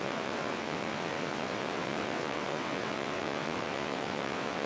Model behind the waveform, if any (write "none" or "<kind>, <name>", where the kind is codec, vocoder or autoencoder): vocoder, WaveNeXt